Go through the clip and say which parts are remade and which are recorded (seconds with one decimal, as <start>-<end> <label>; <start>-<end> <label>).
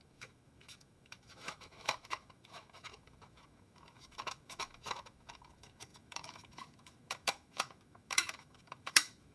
0.0-9.3 remade